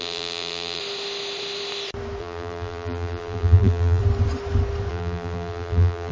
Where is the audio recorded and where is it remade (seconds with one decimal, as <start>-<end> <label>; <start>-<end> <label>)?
0.0-0.8 remade; 0.8-2.2 recorded; 2.2-4.0 remade; 4.0-4.9 recorded; 4.9-6.1 remade